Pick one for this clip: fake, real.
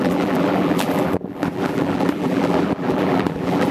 fake